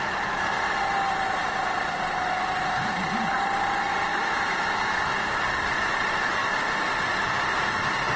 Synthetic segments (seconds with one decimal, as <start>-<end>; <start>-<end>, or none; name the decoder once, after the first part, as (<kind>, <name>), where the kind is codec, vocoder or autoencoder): 4.1-5.4 (autoencoder, DAC-VAE); 6.4-6.9

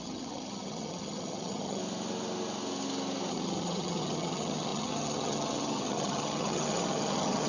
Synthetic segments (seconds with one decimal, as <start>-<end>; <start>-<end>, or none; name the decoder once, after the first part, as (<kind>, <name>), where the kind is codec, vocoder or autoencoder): 0.0-1.8 (vocoder, HiFi-GAN); 3.3-7.5

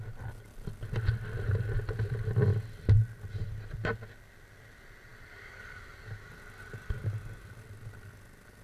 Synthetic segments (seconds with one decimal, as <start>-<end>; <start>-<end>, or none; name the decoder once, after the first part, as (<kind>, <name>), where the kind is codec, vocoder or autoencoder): none

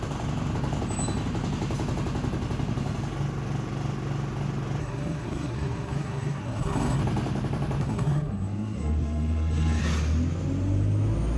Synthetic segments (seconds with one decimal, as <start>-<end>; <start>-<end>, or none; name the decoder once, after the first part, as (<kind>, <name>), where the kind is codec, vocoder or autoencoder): 4.8-7.0 (codec, SNAC); 7.8-9.8

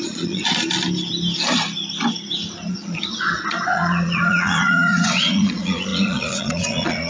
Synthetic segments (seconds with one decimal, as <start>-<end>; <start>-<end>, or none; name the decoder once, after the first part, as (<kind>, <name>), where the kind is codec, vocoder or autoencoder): 0.0-0.5 (vocoder, Vocos); 2.7-7.1